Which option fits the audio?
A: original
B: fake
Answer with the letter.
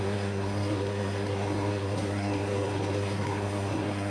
B